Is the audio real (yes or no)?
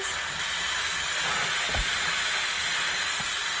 yes